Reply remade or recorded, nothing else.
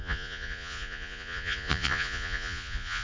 remade